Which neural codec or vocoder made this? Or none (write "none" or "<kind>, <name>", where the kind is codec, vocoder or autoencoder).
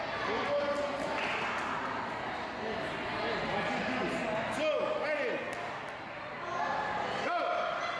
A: none